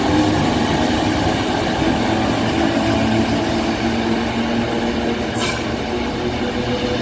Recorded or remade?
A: recorded